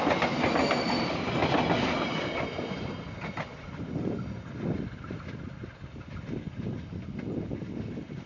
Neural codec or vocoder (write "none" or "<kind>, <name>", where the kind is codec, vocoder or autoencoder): none